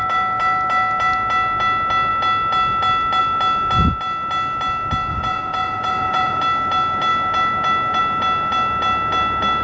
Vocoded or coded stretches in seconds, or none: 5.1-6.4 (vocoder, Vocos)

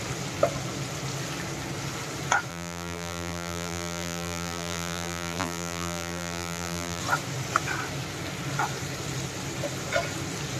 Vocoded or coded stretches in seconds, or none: 2.5-7.0 (vocoder, BigVGAN v2)

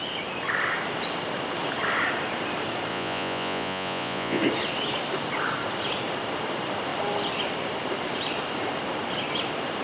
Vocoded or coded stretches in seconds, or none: 2.9-4.4 (vocoder, Vocos)

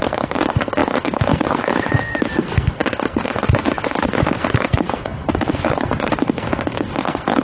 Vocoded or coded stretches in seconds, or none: 0.0-7.4 (codec, SNAC)

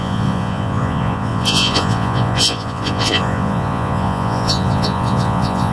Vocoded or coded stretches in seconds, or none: 0.0-5.7 (vocoder, Vocos)

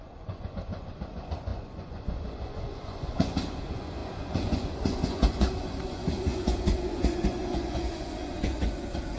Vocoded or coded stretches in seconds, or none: 0.0-9.2 (vocoder, Vocos)

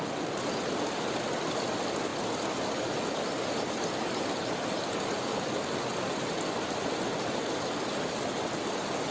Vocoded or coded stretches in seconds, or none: none